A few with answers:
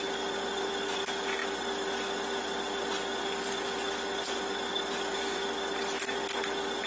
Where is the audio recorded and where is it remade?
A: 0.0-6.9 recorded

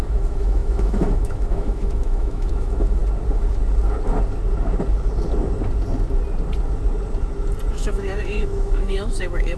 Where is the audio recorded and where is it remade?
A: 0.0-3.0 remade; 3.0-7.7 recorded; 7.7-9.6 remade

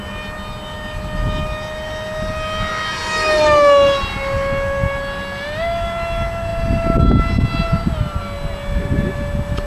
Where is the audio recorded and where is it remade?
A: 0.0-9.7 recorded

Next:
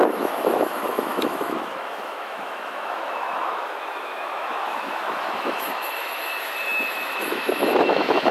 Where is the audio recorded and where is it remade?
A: 0.0-8.3 remade